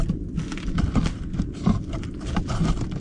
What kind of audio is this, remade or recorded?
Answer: remade